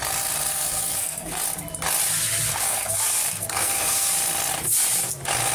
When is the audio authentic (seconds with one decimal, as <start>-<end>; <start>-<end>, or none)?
0.0-0.5; 1.4-2.5; 4.1-5.5